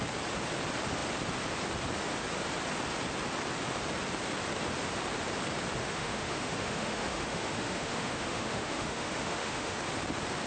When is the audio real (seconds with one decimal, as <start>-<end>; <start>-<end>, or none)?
0.0-5.8; 9.8-10.5